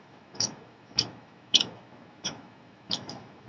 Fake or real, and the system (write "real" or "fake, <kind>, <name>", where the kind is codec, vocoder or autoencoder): fake, autoencoder, DAC-VAE